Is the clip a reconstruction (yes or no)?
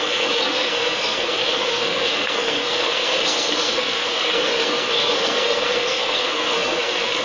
yes